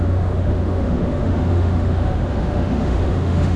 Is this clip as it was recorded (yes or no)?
no